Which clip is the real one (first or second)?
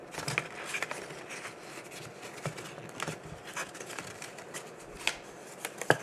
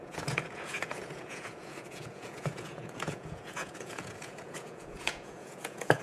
first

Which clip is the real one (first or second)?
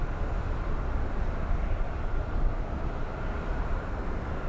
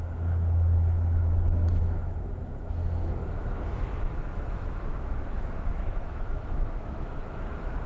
first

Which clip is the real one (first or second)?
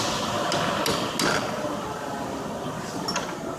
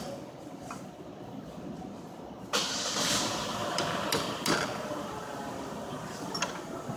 first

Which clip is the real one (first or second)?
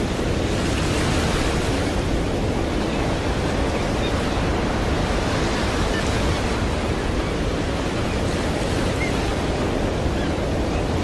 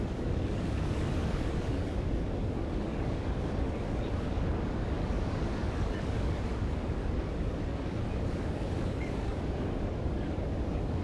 first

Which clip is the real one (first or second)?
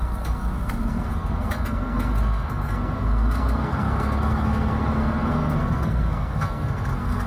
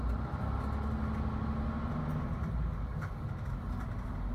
second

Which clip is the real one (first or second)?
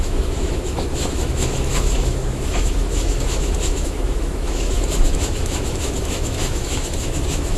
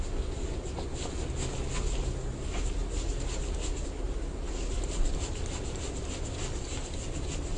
second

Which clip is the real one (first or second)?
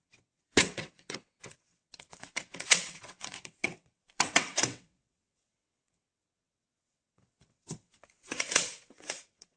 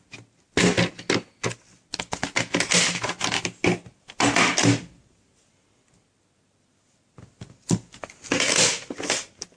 second